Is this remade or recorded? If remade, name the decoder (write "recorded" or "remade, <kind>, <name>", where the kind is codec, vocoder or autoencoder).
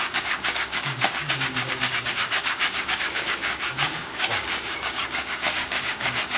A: remade, codec, DAC